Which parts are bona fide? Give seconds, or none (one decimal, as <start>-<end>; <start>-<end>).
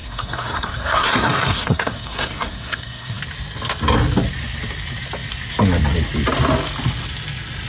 3.2-7.7